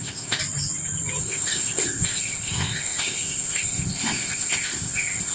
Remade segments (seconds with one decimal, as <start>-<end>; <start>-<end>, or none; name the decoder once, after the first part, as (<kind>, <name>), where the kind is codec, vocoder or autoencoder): 0.0-0.4 (codec, ZipCodec); 1.2-5.3

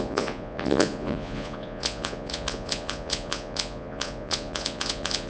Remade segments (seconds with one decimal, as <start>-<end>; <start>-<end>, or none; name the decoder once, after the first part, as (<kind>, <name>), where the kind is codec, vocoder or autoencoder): 0.0-5.3 (vocoder, Vocos)

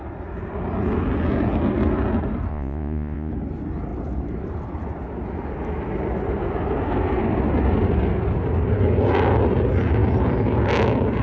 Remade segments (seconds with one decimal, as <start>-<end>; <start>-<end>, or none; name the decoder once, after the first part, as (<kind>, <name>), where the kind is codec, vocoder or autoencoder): 2.5-3.3 (vocoder, Vocos)

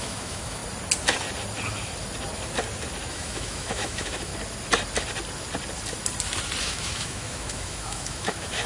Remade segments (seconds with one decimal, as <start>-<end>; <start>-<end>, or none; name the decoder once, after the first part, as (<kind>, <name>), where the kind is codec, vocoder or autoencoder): 0.0-0.6 (autoencoder, DAC-VAE); 3.1-4.3; 6.6-8.7

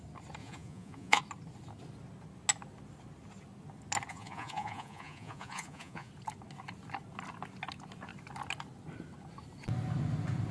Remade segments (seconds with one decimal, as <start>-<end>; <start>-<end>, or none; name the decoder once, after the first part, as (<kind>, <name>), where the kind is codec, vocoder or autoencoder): 0.4-1.2 (vocoder, Vocos); 4.1-6.1

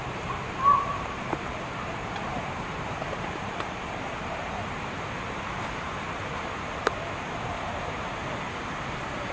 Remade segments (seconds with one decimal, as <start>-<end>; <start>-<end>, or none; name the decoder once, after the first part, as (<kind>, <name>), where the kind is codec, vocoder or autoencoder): 0.0-8.2 (vocoder, BigVGAN v2)

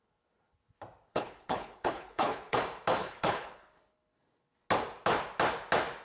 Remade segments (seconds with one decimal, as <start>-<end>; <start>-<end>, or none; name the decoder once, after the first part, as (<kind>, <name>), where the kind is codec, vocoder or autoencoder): 1.1-2.6 (codec, HILCodec); 3.0-3.9